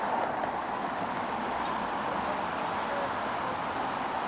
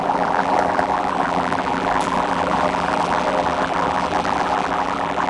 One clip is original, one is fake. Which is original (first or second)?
first